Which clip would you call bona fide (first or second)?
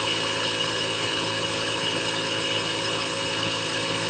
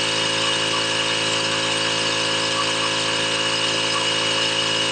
second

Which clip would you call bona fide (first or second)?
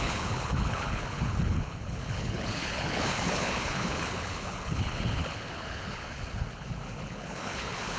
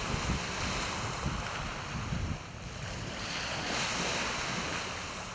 second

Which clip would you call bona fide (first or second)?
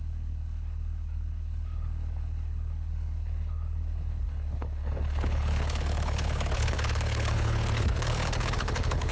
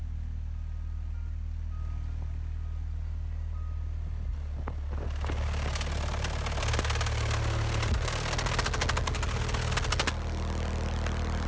second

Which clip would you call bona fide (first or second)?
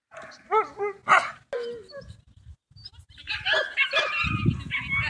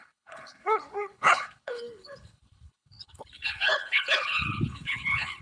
first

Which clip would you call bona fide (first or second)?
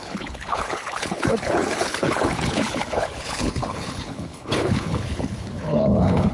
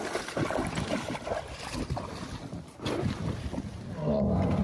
second